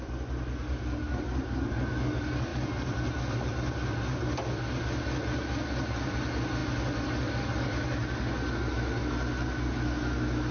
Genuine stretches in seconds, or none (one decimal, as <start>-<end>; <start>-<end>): 0.0-10.5